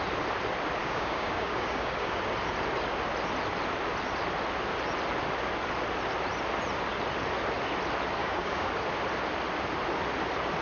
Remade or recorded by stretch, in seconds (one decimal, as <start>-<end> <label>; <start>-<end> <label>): 0.0-0.8 recorded; 0.8-2.2 remade; 2.2-8.2 recorded; 8.2-8.7 remade; 8.7-10.6 recorded